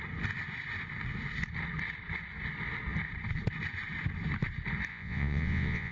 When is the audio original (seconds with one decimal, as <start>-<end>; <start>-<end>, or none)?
0.0-4.9